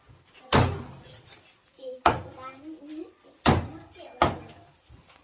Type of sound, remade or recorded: recorded